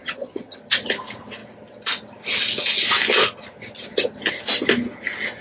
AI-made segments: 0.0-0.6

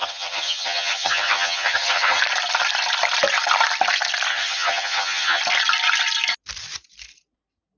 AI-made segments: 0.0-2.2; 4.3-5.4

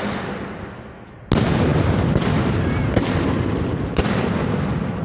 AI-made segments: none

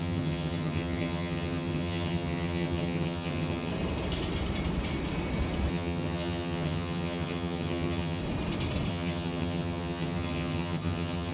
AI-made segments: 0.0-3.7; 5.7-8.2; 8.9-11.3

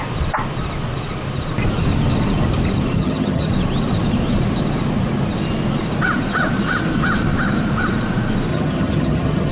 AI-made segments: 3.0-3.5; 8.5-9.5

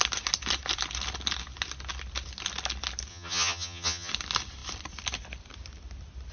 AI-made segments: 3.1-4.1

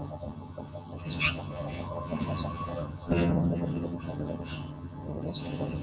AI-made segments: 0.0-5.8